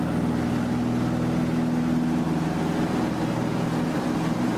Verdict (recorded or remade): recorded